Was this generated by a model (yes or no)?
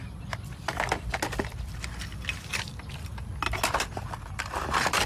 no